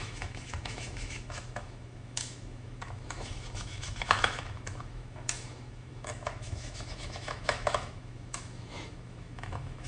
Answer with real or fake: fake